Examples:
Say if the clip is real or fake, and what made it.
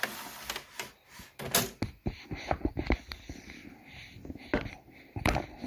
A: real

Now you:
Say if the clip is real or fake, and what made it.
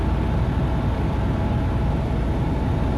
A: real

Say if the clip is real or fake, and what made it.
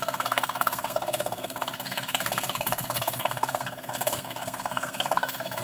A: fake, codec, SNAC